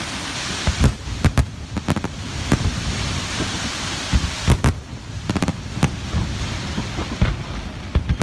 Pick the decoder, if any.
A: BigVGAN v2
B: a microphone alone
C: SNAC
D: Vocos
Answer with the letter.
A